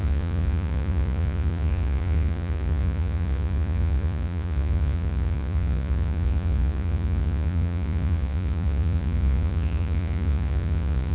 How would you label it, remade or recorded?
remade